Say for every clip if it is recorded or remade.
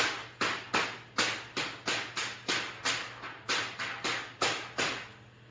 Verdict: recorded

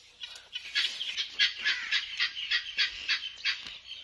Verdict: recorded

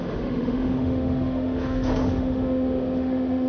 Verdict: remade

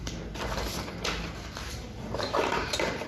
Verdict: recorded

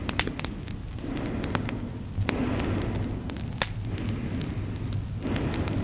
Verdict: recorded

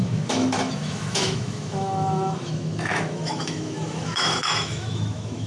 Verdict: remade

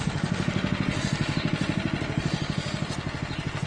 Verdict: recorded